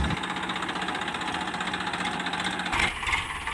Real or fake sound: real